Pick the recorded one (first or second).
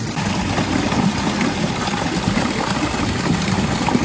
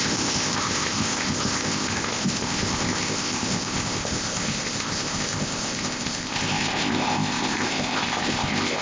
first